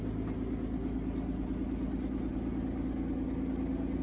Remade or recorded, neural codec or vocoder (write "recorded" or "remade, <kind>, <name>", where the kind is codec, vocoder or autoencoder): recorded